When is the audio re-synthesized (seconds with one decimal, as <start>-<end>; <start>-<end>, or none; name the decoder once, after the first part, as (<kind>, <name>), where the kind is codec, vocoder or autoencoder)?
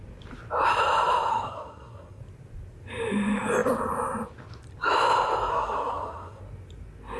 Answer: 1.3-2.2 (codec, SNAC); 5.5-6.4